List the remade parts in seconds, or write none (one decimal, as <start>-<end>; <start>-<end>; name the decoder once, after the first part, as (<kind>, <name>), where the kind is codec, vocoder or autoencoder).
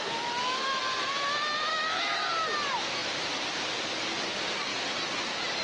0.0-0.8 (autoencoder, DAC-VAE); 1.7-2.3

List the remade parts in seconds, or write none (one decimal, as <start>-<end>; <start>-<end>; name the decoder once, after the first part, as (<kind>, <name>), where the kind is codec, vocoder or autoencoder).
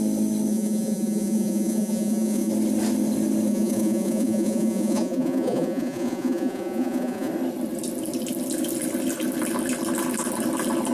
0.5-2.5 (vocoder, Vocos); 3.5-7.3